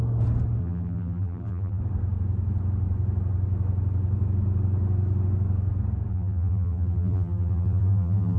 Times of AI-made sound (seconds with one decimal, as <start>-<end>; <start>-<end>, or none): 0.6-1.8; 6.1-8.4